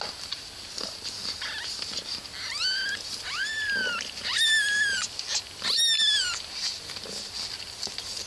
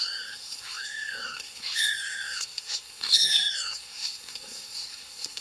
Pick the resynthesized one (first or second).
second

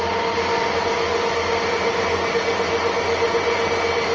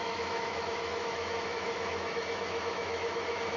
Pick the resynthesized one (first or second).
second